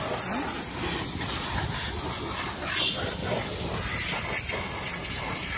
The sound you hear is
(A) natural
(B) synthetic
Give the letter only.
A